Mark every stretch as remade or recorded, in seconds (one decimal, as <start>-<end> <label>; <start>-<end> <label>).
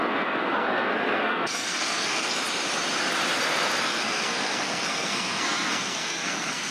0.0-2.4 remade; 2.4-3.8 recorded; 3.8-6.7 remade